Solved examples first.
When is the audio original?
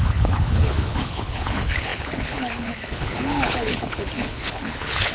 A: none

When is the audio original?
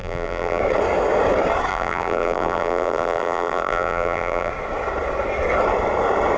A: 0.6-1.7; 4.5-6.4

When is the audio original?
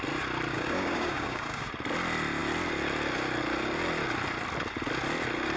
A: 0.0-0.5; 1.7-5.6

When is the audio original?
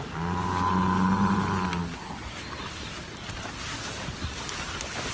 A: 0.0-5.1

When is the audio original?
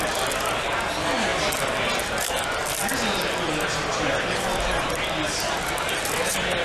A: 0.0-6.6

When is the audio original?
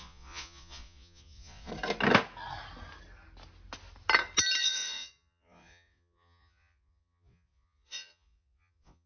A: 1.7-4.6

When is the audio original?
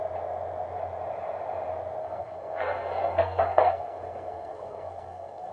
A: 0.0-2.0